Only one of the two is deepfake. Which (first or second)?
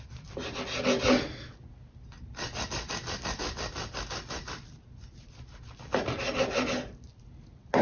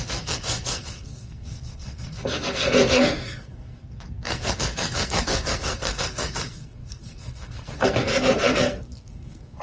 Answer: second